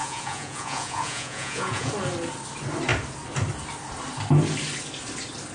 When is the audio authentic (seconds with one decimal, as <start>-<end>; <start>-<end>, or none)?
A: 1.9-5.5